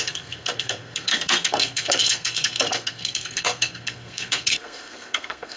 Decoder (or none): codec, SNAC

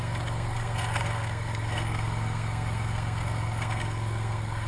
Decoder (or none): codec, SNAC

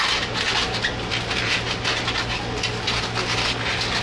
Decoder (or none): none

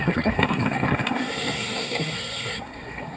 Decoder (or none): codec, SNAC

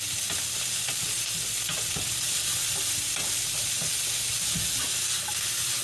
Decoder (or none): none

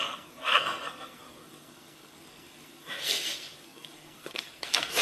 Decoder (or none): codec, SNAC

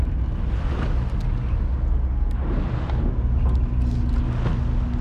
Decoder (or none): none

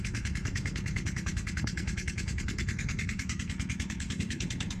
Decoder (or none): codec, SNAC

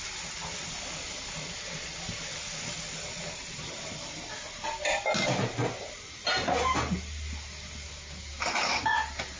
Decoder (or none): none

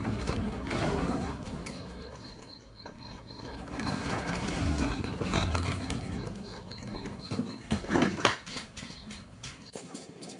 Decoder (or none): codec, SNAC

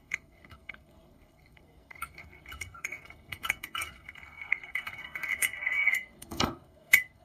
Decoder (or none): codec, SNAC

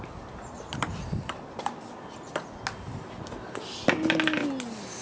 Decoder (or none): none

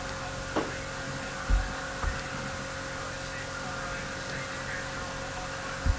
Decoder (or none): none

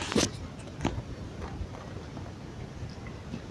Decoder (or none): none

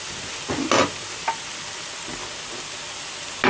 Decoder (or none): none